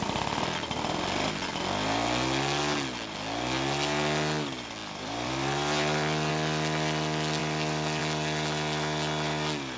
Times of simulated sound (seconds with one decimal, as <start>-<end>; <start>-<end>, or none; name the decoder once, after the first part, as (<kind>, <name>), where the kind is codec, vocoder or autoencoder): 4.8-6.3 (vocoder, BigVGAN v2); 7.4-8.0